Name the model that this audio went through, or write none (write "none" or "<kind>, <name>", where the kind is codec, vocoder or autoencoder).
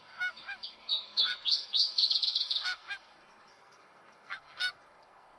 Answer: codec, SNAC